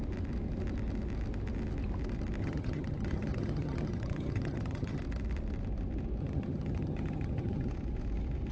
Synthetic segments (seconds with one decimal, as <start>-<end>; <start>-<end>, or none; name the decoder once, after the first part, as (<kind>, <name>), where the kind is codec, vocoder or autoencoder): 2.4-5.0 (vocoder, HiFi-GAN); 6.2-7.7